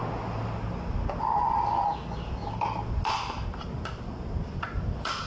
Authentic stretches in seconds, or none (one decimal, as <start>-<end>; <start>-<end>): 0.0-5.3